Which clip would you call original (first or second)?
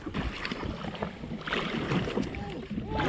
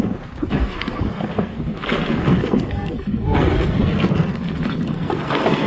first